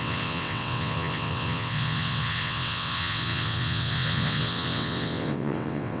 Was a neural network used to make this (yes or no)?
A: yes